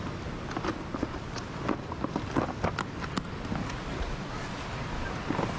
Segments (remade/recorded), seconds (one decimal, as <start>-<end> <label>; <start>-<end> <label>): 0.0-3.6 recorded; 3.6-4.3 remade; 4.3-5.6 recorded